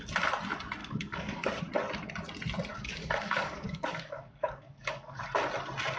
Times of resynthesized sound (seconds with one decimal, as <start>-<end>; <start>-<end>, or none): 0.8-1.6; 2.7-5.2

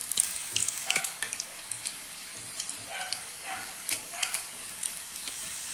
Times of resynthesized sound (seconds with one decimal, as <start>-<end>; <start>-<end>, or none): 0.0-2.3; 3.1-5.7

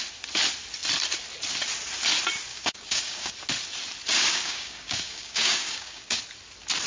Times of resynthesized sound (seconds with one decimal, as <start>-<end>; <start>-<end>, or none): 2.5-3.3; 4.3-6.2